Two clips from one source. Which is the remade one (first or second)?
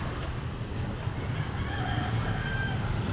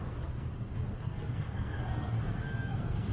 second